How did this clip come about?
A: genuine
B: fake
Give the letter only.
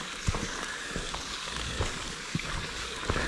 B